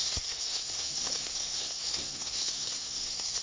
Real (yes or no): no